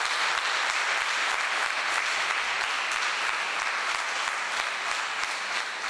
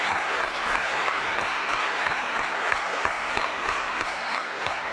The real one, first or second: first